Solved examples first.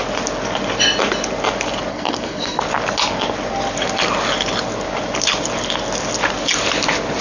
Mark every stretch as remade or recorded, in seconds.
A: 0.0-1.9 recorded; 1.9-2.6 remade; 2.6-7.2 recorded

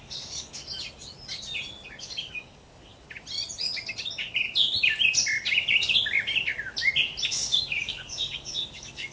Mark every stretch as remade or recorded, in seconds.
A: 0.0-0.6 remade; 0.6-2.0 recorded; 2.0-2.9 remade; 2.9-7.3 recorded; 7.3-9.1 remade

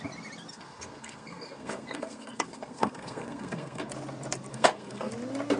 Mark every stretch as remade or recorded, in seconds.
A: 0.0-0.5 recorded; 0.5-3.9 remade; 3.9-4.5 recorded; 4.5-5.1 remade; 5.1-5.6 recorded

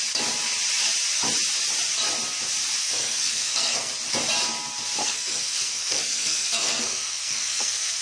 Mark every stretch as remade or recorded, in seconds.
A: 0.0-2.8 recorded; 2.8-3.9 remade; 3.9-5.0 recorded; 5.0-8.0 remade

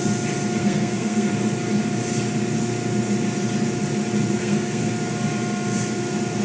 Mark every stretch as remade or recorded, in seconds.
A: 0.0-0.6 recorded; 0.6-1.3 remade; 1.3-4.4 recorded; 4.4-4.9 remade; 4.9-6.4 recorded

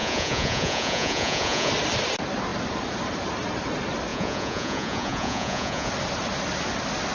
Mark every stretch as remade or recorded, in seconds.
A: 0.0-1.7 remade; 1.7-4.1 recorded; 4.1-5.9 remade; 5.9-7.1 recorded